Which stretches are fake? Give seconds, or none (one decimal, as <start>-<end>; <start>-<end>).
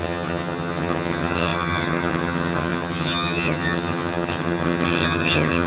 0.0-5.7